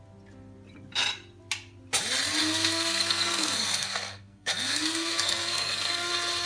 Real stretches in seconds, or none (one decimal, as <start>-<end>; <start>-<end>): 0.0-2.4; 6.1-6.5

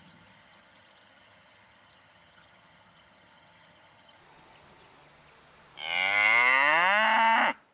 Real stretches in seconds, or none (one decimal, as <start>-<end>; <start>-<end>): 4.2-7.7